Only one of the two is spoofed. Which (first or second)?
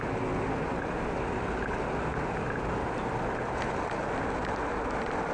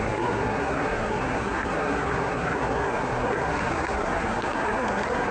second